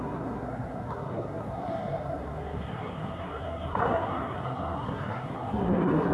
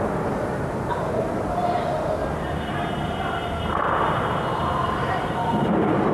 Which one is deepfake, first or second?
first